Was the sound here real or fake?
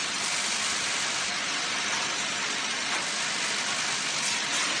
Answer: real